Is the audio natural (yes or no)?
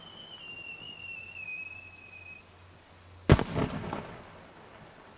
yes